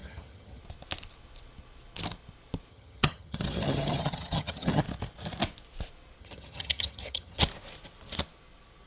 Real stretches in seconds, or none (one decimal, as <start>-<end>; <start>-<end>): 0.6-2.7; 4.8-6.2; 7.4-8.9

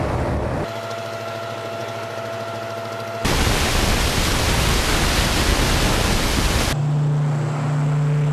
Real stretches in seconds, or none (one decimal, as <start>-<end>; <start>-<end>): 0.0-8.3